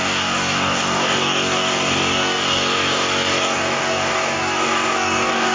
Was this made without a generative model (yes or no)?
no